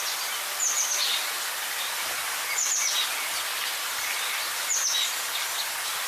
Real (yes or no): yes